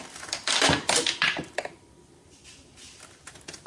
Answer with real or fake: fake